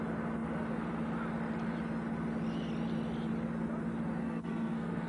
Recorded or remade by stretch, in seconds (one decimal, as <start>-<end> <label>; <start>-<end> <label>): 0.0-4.2 recorded; 4.2-5.1 remade